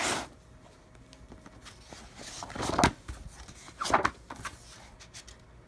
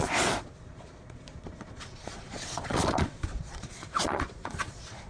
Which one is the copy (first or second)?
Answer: second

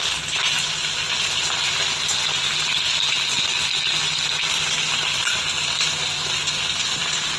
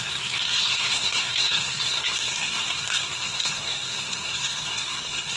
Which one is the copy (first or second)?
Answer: second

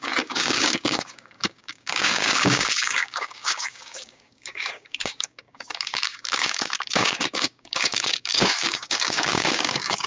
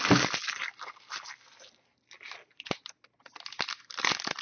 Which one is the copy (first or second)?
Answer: first